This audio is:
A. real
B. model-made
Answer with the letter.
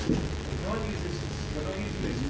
A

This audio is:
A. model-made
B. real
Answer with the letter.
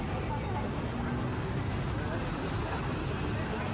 B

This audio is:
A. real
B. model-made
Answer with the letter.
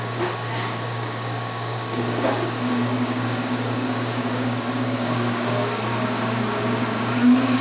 B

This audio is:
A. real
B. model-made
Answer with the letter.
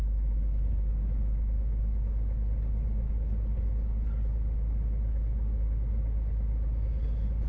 A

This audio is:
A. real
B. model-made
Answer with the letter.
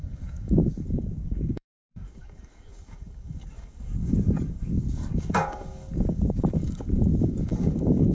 B